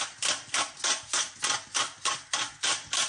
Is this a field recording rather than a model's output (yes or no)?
yes